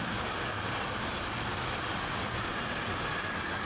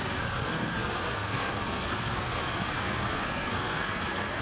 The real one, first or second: first